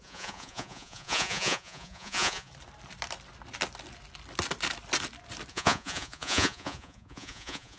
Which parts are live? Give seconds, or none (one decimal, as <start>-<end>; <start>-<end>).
2.5-5.5